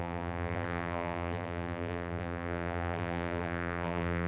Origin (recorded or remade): remade